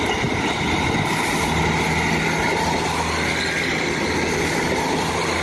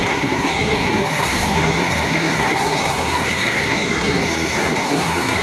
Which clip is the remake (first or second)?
second